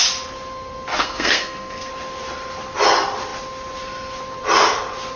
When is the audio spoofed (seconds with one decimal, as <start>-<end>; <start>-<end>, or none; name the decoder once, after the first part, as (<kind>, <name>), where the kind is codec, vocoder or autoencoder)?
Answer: 1.0-1.9 (codec, SNAC)